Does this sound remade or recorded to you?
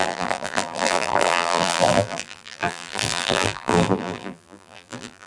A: remade